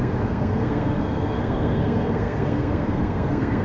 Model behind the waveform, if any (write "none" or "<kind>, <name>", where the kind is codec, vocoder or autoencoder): codec, SNAC